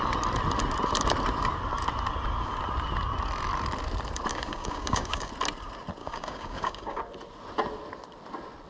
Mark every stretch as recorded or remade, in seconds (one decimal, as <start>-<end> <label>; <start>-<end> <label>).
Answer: 0.0-4.3 recorded; 4.3-5.3 remade; 5.3-6.0 recorded; 6.0-7.0 remade; 7.0-8.7 recorded

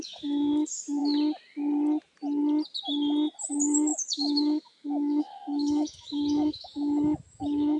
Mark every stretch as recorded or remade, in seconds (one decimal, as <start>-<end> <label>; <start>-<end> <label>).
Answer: 0.0-1.0 remade; 1.0-3.5 recorded; 3.5-7.8 remade

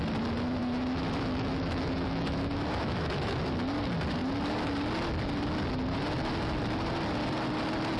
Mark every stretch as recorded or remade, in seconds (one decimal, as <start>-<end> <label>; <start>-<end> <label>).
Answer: 0.0-0.6 recorded; 0.6-3.4 remade; 3.4-8.0 recorded

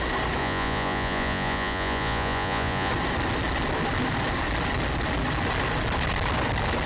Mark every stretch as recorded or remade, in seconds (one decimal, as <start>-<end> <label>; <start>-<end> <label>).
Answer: 0.0-0.4 recorded; 0.4-2.9 remade; 2.9-6.9 recorded

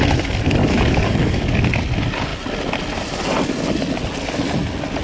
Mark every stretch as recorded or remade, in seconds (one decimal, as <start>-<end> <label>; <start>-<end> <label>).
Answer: 0.0-0.6 recorded; 0.6-1.6 remade; 1.6-5.0 recorded

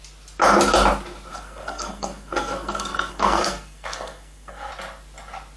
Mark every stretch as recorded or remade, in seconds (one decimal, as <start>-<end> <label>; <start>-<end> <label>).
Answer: 0.0-1.3 recorded; 1.3-4.7 remade; 4.7-5.6 recorded

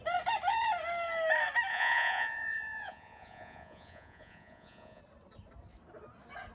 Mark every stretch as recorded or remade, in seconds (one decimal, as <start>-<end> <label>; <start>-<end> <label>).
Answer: 0.0-1.7 recorded; 1.7-5.0 remade; 5.0-6.5 recorded

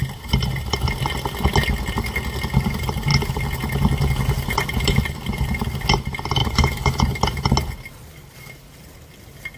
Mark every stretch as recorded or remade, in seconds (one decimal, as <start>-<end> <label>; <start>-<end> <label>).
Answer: 0.0-6.4 recorded; 6.4-7.0 remade; 7.0-9.6 recorded